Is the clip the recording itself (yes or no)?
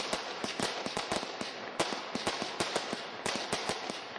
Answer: yes